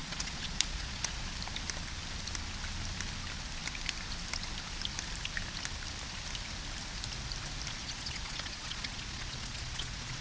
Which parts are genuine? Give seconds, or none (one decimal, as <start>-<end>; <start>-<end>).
1.2-7.8